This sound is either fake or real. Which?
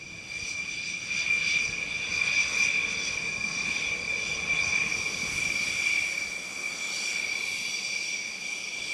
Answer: real